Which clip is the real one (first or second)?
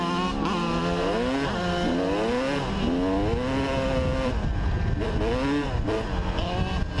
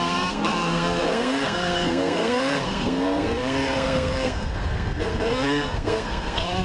first